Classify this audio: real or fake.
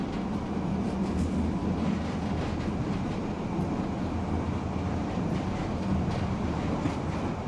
real